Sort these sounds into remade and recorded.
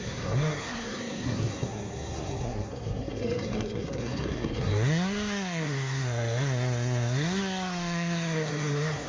remade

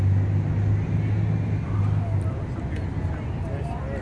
recorded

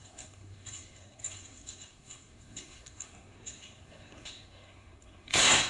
remade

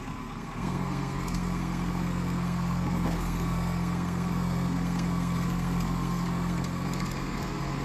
remade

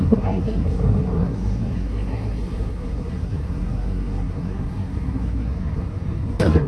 remade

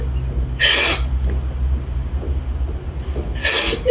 recorded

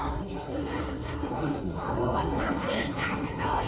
remade